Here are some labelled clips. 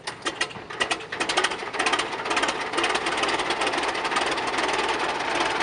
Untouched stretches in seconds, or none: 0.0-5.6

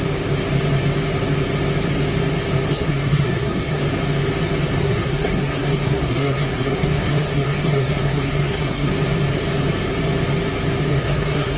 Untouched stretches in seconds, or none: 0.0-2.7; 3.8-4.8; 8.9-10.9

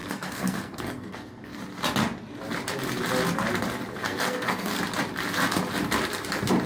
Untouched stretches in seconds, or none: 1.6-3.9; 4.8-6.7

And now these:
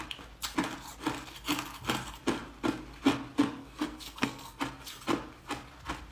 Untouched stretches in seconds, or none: 0.0-3.6; 4.6-6.1